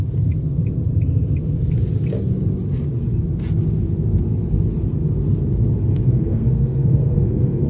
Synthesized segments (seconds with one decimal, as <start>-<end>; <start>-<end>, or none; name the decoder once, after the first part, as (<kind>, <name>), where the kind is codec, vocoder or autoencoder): 5.9-7.7 (codec, SNAC)